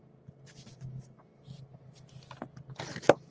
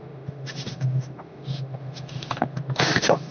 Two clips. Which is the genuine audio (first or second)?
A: first